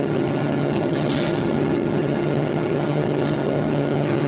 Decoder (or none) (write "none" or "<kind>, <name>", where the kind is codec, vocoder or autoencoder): vocoder, HiFi-GAN